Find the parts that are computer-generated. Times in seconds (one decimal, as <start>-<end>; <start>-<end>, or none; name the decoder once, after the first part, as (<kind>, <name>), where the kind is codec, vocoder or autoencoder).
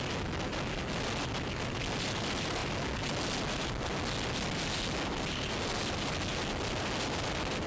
none